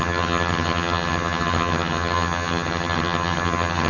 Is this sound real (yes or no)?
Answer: no